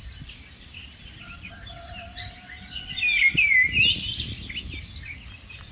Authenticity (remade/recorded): recorded